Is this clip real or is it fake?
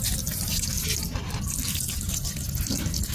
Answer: real